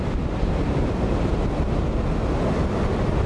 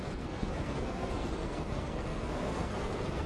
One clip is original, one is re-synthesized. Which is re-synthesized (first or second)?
second